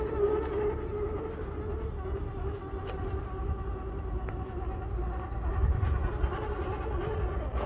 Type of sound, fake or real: real